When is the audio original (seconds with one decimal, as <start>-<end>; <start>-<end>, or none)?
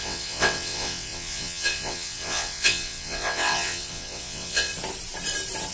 4.7-5.7